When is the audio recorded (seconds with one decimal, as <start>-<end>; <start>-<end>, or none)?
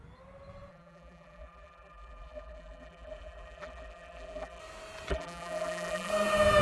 0.0-0.7; 4.6-5.1; 6.1-6.6